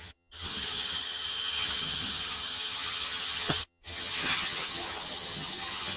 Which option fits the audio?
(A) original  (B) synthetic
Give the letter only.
B